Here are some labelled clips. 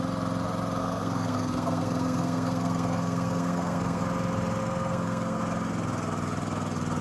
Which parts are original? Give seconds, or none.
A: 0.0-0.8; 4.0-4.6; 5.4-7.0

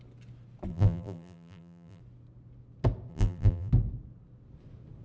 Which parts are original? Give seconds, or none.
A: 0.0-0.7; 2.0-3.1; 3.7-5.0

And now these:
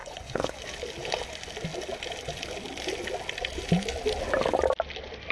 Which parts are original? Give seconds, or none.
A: 0.6-5.3

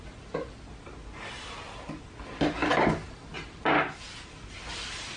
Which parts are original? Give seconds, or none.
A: 0.0-5.2

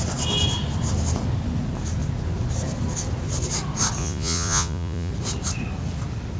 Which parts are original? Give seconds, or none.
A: 0.0-4.0; 5.1-6.4

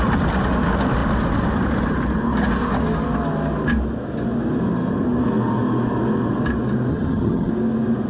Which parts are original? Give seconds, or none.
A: 0.0-6.9; 7.5-8.1

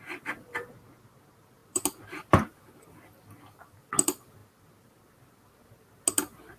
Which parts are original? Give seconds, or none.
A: 0.0-6.6